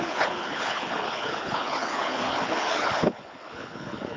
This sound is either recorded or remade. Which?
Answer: remade